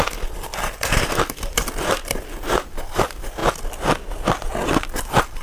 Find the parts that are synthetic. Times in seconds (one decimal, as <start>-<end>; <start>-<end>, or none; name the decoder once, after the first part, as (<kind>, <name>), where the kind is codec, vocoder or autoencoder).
0.0-3.4 (vocoder, BigVGAN v2); 4.4-5.4